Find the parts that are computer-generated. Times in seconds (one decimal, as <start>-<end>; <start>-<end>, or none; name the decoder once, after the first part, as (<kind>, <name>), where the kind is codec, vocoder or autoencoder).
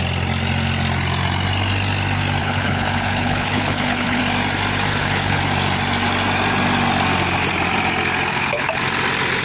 2.4-4.2 (codec, HILCodec); 4.9-5.4; 8.3-8.8